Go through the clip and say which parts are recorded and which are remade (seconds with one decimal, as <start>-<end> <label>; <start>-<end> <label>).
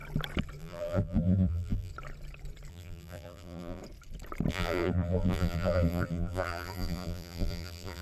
0.0-0.6 recorded; 0.6-1.9 remade; 1.9-2.7 recorded; 2.7-3.8 remade; 3.8-4.5 recorded; 4.5-8.0 remade